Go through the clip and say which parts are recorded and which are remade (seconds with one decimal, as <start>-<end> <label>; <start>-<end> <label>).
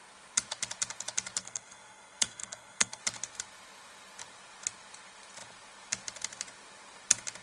0.0-1.4 recorded; 1.4-3.0 remade; 3.0-7.4 recorded